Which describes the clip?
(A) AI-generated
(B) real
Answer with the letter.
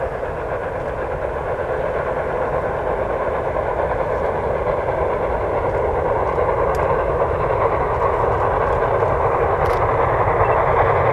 B